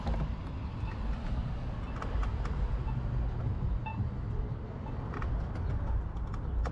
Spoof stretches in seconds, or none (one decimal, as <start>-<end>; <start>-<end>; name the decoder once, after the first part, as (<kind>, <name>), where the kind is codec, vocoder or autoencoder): 3.9-4.6 (vocoder, BigVGAN v2)